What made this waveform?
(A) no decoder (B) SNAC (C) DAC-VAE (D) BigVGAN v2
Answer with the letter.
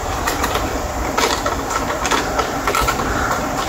D